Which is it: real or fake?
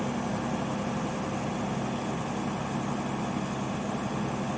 real